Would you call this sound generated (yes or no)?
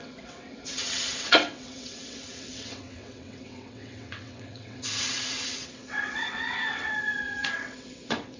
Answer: yes